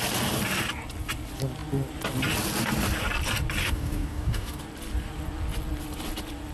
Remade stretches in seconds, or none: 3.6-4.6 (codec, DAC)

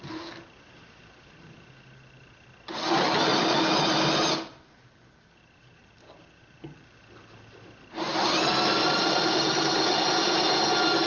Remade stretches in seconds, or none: 8.8-10.0 (vocoder, BigVGAN v2)